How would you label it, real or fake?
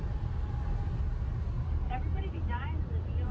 real